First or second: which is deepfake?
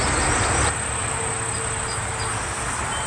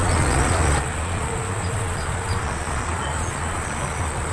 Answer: second